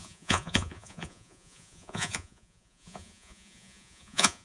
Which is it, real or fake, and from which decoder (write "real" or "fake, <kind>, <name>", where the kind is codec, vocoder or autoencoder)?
fake, vocoder, Vocos